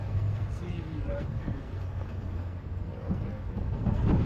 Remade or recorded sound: remade